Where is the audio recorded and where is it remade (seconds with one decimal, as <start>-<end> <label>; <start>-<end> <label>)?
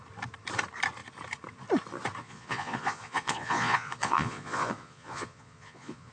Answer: 0.0-2.2 recorded; 2.2-6.1 remade